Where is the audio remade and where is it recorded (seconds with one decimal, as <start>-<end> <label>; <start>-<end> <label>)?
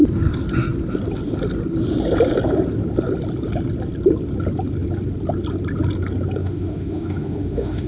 0.0-6.4 recorded; 6.4-7.9 remade